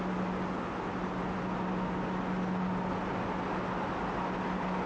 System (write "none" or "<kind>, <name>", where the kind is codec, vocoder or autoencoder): none